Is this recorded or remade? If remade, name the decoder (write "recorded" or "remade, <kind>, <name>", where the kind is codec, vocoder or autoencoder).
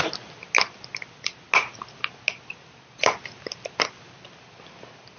recorded